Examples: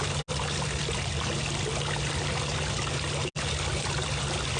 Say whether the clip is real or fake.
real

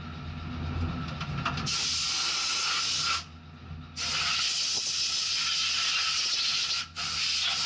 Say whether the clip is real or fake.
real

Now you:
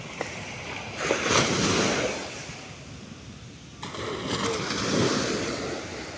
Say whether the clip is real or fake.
real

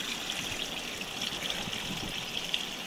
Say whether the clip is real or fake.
real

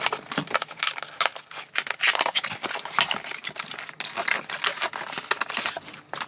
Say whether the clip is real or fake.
real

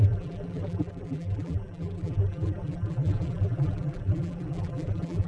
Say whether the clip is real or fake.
fake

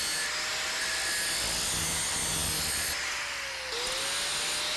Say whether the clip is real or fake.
real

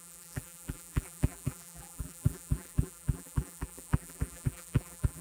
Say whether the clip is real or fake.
fake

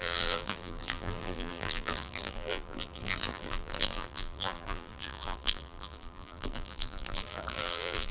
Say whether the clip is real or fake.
fake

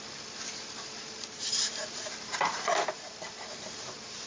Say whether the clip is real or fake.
fake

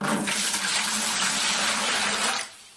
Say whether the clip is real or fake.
fake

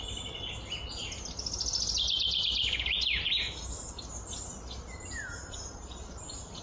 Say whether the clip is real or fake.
real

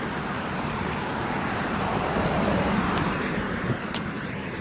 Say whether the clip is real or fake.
fake